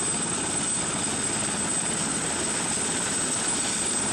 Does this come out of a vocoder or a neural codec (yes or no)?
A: no